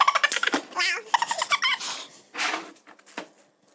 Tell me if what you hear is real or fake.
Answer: real